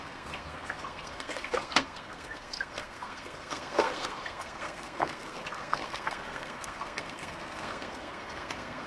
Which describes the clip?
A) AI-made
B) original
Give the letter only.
A